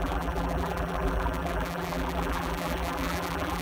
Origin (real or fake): fake